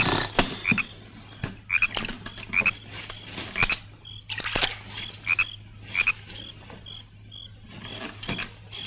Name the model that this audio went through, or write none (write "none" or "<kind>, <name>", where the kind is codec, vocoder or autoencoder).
none